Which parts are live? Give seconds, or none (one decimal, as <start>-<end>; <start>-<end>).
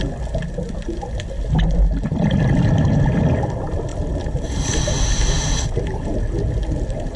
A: 0.0-3.9; 4.7-7.2